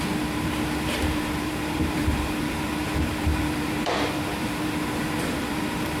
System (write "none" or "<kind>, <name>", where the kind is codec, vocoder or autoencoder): vocoder, BigVGAN v2